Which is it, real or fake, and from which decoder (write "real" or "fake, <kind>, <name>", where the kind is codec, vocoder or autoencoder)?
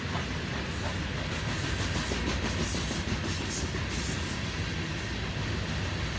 real